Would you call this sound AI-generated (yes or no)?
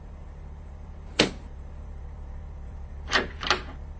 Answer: yes